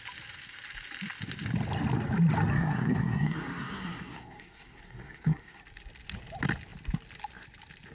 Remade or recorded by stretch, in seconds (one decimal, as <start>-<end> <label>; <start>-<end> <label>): 0.0-2.5 recorded; 2.5-5.6 remade; 5.6-7.9 recorded